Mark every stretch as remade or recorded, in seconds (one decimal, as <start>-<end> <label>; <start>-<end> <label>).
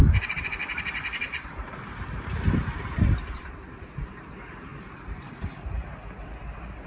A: 0.0-0.6 remade; 0.6-1.2 recorded; 1.2-4.7 remade; 4.7-6.9 recorded